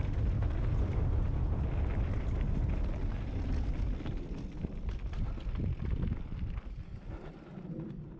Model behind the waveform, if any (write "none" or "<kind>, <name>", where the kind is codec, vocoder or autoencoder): none